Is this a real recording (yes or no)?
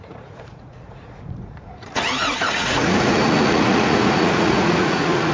no